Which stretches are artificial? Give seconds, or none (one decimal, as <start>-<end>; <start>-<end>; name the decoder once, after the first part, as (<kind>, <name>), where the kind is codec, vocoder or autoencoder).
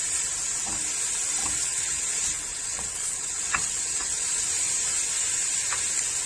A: 1.4-2.0 (vocoder, WaveNeXt); 2.5-4.4